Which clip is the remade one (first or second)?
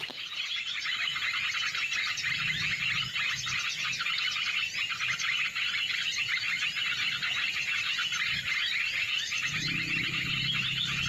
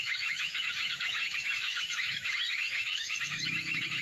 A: second